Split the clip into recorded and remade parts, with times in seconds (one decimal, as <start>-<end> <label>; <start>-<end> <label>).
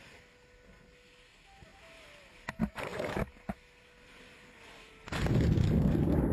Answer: 0.0-6.3 recorded